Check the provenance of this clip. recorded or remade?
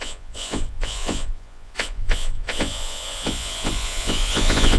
remade